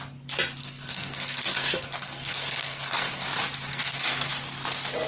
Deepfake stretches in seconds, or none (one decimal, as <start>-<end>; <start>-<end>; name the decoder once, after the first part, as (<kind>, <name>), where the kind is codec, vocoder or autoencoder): 0.6-3.2 (codec, SNAC); 3.7-4.3